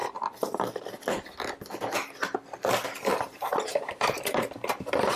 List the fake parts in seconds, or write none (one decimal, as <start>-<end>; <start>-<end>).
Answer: 0.0-0.9; 3.1-5.2